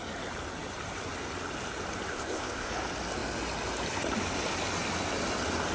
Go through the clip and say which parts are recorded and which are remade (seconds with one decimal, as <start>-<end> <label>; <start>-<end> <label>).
0.0-2.1 recorded; 2.1-2.7 remade; 2.7-5.7 recorded